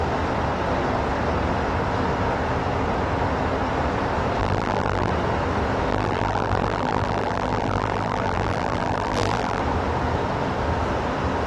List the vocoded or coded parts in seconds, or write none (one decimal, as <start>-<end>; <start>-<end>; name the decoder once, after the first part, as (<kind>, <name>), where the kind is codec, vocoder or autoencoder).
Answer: 4.4-5.1 (vocoder, BigVGAN v2); 5.9-9.6